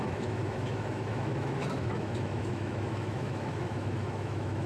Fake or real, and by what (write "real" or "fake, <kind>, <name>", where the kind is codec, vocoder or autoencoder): fake, autoencoder, DAC-VAE